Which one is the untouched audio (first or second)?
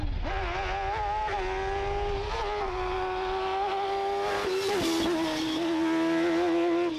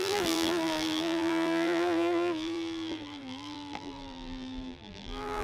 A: first